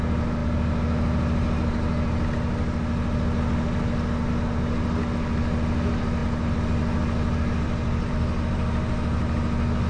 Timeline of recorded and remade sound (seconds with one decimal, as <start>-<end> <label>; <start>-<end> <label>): 0.0-9.9 recorded